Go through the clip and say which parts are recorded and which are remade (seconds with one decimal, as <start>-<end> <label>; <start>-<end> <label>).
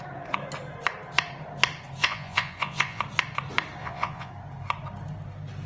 0.0-2.0 recorded; 2.0-3.0 remade; 3.0-3.8 recorded; 3.8-4.3 remade; 4.3-5.7 recorded